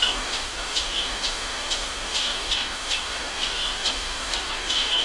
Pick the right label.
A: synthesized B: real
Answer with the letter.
A